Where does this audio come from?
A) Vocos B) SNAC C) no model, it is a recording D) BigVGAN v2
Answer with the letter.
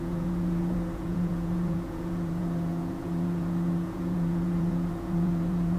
A